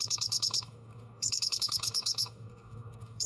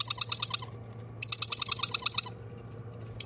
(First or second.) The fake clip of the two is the first